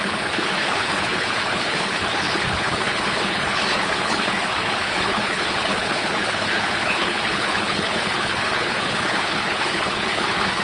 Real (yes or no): no